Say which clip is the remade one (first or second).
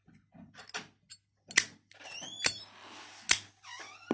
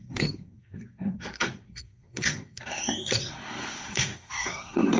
second